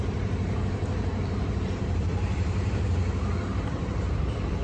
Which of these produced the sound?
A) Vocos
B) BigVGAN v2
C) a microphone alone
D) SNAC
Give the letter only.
B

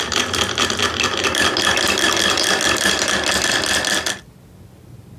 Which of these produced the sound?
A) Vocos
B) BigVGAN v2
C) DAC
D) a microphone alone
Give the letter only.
D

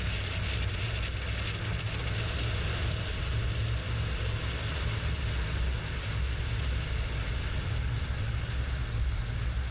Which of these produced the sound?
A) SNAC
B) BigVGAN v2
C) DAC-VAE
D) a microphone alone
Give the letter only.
D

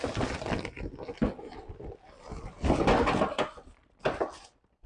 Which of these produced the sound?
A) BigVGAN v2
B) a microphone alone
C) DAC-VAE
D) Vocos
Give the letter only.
B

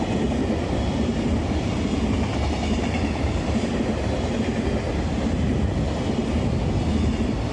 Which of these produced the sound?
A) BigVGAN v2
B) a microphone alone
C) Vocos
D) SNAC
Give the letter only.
B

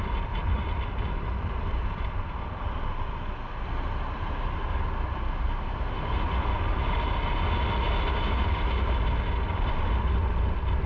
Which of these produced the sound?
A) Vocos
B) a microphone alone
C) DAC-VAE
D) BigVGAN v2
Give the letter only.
B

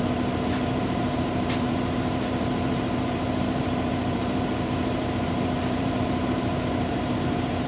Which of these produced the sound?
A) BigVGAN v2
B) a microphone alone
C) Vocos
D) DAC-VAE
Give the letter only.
A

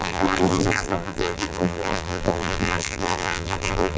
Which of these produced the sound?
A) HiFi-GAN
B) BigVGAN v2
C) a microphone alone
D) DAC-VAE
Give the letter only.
B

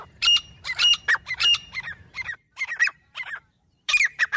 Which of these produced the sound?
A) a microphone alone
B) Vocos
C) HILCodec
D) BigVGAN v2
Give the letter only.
D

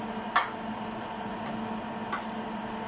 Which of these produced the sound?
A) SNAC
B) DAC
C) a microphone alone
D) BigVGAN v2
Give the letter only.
C